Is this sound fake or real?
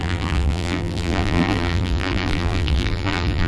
fake